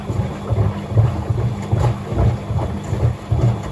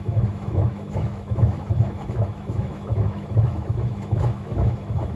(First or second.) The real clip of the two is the first